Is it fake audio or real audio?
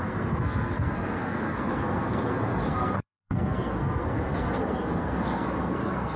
fake